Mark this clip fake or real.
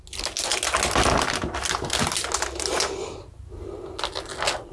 real